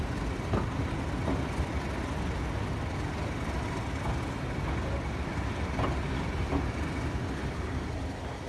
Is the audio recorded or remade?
recorded